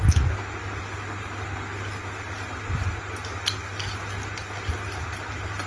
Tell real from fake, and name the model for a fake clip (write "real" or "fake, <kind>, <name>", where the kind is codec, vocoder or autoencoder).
real